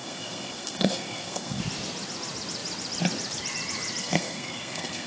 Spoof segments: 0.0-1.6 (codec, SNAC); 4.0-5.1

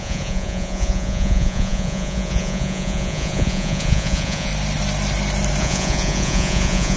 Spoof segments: 0.0-4.5 (vocoder, Vocos); 5.6-7.0

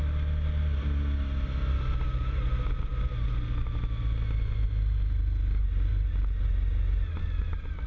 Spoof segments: none

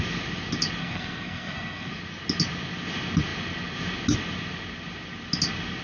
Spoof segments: 0.8-1.9 (codec, SNAC)